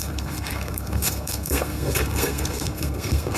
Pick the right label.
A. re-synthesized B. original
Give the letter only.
A